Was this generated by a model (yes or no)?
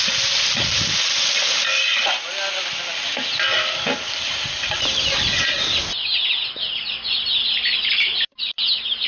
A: no